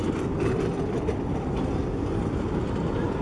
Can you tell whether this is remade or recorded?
recorded